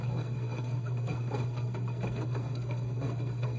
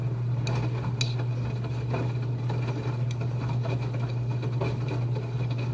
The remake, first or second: first